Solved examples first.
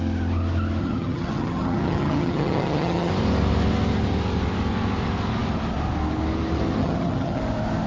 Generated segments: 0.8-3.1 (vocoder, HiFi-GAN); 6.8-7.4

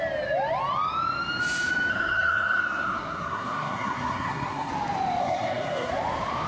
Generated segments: 1.9-4.7 (codec, SNAC); 5.2-5.9

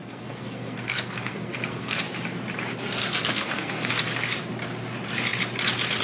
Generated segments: 0.0-2.0 (codec, SNAC); 3.0-3.9